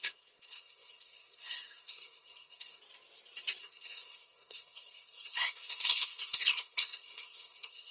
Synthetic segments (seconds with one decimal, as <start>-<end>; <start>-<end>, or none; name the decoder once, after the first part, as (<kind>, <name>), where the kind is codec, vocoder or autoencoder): 0.0-2.8 (codec, SNAC); 3.6-7.9